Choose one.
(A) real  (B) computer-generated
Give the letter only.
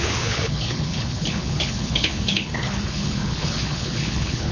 B